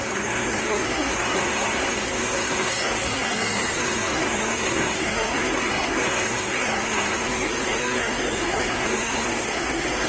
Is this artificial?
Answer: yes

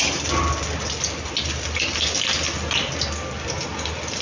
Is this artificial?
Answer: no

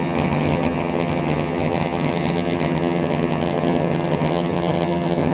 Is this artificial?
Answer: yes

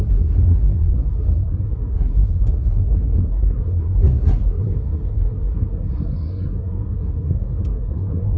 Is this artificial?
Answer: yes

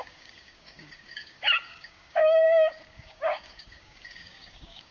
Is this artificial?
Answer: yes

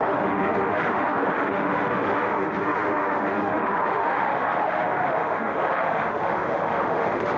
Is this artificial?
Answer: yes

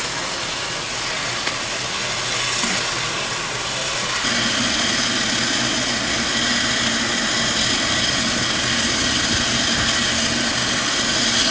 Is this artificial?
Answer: no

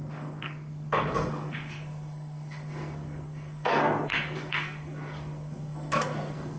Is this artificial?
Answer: yes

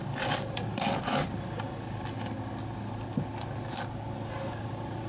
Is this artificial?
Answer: no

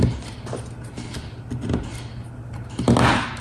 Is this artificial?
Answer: no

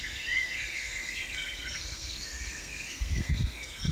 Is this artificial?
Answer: yes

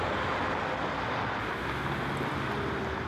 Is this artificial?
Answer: no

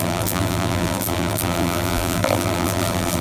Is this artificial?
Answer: yes